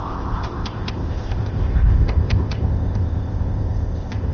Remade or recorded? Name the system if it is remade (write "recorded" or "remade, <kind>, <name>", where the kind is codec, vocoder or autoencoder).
remade, codec, ZipCodec